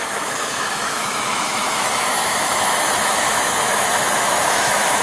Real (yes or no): no